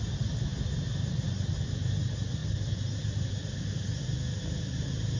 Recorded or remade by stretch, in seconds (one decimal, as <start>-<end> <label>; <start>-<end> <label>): 0.0-5.2 recorded